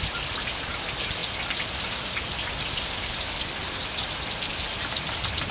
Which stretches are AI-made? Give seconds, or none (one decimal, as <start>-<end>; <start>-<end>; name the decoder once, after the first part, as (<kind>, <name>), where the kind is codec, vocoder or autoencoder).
none